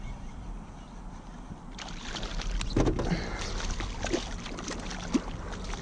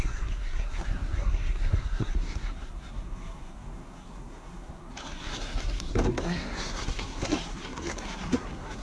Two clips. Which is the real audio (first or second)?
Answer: first